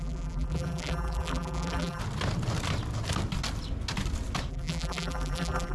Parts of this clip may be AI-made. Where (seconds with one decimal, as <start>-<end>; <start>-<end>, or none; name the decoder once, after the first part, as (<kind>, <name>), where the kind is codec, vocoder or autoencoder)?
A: 0.0-2.0 (vocoder, BigVGAN v2); 4.5-5.7